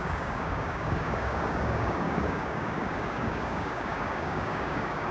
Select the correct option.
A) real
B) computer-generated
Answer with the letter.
B